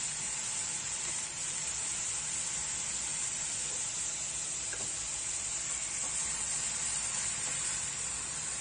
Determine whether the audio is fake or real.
real